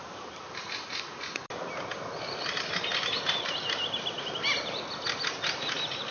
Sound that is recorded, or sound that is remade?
recorded